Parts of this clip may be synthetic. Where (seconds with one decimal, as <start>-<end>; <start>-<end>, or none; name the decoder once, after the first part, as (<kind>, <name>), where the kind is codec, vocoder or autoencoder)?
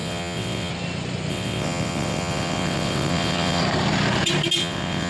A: 0.0-0.7 (vocoder, WaveNeXt); 1.3-3.6; 4.6-5.1